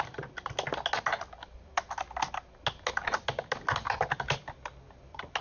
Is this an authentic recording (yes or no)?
yes